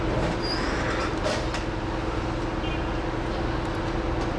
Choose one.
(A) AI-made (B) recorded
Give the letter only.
B